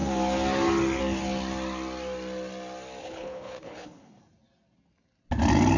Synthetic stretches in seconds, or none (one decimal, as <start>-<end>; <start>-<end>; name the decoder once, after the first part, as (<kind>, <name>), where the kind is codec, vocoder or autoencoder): 3.0-4.2 (codec, HILCodec)